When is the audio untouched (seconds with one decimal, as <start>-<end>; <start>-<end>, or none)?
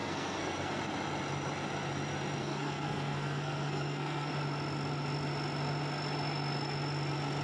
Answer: 0.8-2.4; 4.3-7.4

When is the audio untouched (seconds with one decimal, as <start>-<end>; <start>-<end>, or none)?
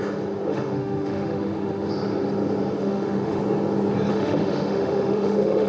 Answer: 0.0-0.5; 1.9-2.8; 3.4-4.1